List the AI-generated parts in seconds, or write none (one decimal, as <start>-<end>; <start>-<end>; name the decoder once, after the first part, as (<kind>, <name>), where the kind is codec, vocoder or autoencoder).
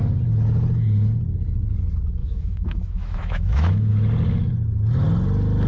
2.2-3.9 (autoencoder, DAC-VAE)